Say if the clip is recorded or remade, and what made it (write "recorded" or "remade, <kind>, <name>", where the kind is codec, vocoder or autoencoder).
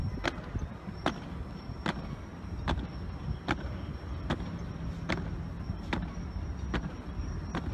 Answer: recorded